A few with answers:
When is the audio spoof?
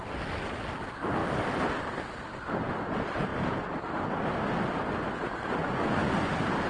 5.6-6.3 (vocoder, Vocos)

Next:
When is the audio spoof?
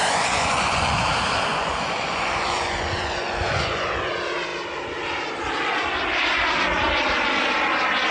0.0-1.1 (vocoder, Vocos); 1.5-4.1